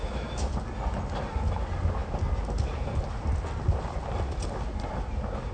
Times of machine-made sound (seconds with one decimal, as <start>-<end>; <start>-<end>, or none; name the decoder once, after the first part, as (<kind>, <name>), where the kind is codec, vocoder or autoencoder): 0.0-0.5 (autoencoder, DAC-VAE)